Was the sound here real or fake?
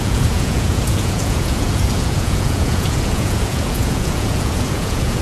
fake